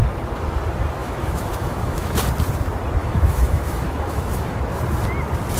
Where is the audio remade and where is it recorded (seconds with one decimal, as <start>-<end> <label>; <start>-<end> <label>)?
0.0-1.0 recorded; 1.0-2.2 remade; 2.2-3.0 recorded; 3.0-4.6 remade; 4.6-5.6 recorded